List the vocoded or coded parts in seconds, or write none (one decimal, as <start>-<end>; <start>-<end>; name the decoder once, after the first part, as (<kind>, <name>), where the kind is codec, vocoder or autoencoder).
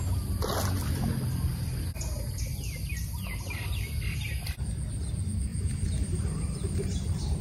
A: 5.5-7.4 (vocoder, BigVGAN v2)